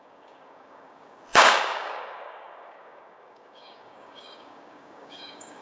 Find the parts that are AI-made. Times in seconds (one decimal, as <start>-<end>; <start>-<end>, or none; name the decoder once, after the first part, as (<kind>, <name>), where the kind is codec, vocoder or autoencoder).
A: 0.0-5.6 (codec, DAC)